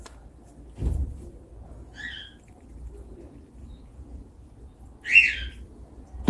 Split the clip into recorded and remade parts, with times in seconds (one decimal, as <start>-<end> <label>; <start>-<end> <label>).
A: 0.0-3.6 recorded; 3.6-4.2 remade; 4.2-6.3 recorded